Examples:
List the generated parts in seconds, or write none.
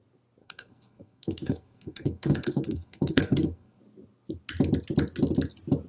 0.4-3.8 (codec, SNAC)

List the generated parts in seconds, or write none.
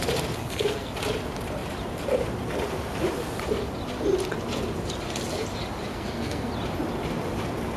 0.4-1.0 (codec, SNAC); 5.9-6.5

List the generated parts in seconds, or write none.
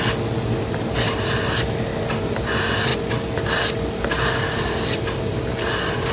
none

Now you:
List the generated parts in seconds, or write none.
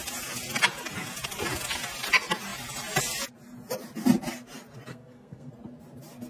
4.9-5.5 (codec, SNAC)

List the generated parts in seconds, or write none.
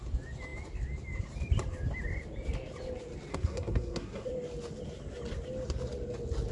3.3-4.3 (codec, SNAC)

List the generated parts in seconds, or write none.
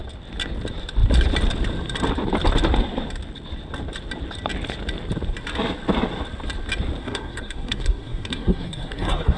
7.0-9.4 (codec, SNAC)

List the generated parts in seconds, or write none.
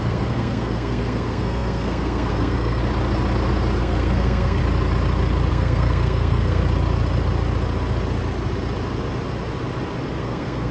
0.0-2.8 (codec, SNAC); 3.8-4.6; 5.5-6.6; 10.2-10.7